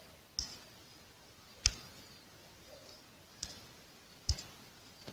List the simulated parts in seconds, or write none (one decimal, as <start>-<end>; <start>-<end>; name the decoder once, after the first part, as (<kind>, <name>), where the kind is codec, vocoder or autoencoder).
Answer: none